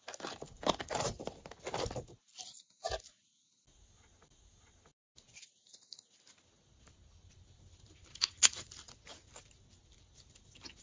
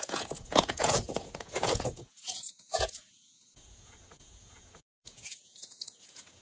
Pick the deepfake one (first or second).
second